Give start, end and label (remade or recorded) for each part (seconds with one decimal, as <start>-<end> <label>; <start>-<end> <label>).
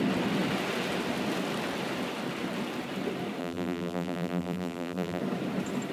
0.0-3.4 recorded; 3.4-5.2 remade; 5.2-5.9 recorded